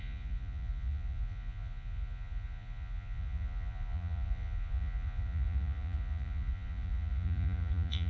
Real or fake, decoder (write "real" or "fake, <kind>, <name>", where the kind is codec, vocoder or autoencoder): fake, vocoder, Vocos